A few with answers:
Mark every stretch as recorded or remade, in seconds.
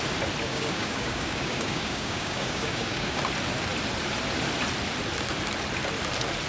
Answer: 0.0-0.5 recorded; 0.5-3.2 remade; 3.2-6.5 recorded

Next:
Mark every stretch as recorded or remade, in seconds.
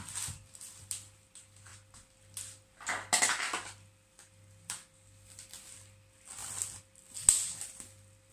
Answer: 0.0-8.3 recorded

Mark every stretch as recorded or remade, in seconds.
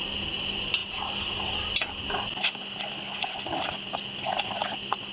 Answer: 0.0-5.1 recorded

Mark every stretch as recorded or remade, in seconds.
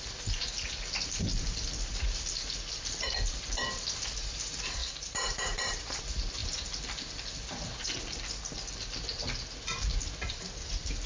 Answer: 0.0-4.8 recorded; 4.8-6.0 remade; 6.0-11.1 recorded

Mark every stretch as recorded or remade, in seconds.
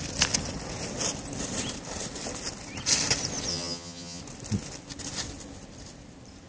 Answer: 0.0-3.5 recorded; 3.5-4.2 remade; 4.2-6.5 recorded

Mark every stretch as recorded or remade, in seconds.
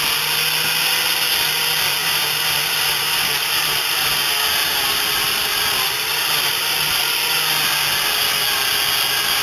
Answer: 0.0-2.0 recorded; 2.0-7.0 remade; 7.0-9.4 recorded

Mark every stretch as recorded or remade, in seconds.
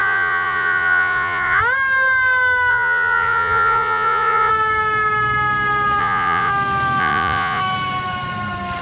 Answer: 0.0-1.6 remade; 1.6-2.7 recorded; 2.7-4.5 remade; 4.5-6.0 recorded; 6.0-6.5 remade; 6.5-7.0 recorded; 7.0-7.6 remade; 7.6-8.8 recorded